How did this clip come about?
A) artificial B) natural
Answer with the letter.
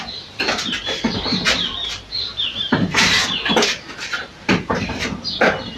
A